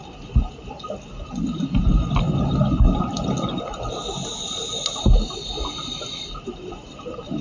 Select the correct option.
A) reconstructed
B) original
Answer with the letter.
B